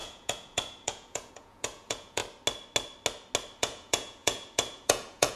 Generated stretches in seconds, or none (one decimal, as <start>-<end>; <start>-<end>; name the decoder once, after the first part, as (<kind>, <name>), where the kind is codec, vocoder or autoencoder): 0.0-2.2 (vocoder, Vocos); 3.6-5.3

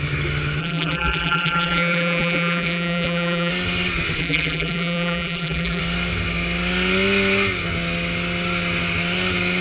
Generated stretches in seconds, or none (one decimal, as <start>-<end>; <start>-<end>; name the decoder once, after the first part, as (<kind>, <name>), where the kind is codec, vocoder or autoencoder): 0.6-3.5 (vocoder, BigVGAN v2); 4.2-5.8

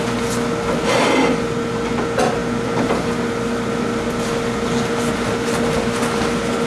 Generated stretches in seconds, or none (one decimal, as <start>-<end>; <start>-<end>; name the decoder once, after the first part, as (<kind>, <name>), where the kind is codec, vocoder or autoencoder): none

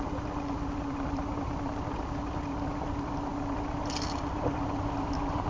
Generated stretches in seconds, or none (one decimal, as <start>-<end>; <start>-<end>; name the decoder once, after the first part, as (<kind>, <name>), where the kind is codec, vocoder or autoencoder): none

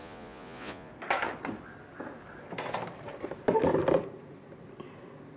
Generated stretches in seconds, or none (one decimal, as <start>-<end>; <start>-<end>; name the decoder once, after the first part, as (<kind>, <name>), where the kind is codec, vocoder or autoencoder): 0.0-0.9 (vocoder, Vocos)

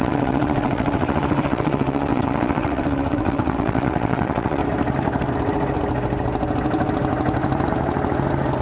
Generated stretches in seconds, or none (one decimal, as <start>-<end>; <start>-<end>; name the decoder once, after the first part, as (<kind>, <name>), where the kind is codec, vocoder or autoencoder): 0.0-4.6 (vocoder, WaveNeXt)

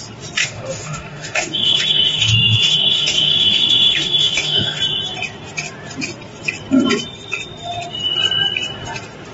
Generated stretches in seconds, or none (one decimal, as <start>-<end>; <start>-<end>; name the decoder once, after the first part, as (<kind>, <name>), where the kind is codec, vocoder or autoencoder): 0.4-4.8 (autoencoder, DAC-VAE)